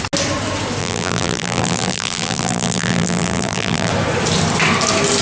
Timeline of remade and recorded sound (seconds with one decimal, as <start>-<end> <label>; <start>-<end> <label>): 0.0-0.8 recorded; 0.8-3.9 remade; 3.9-5.2 recorded